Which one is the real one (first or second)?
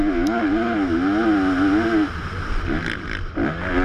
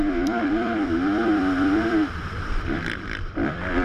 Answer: first